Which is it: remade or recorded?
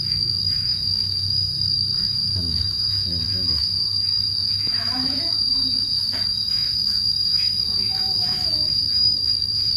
remade